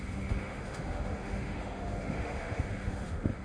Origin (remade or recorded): remade